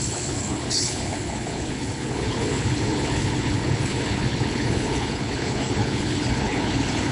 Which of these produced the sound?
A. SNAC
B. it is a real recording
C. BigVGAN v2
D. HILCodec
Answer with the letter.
D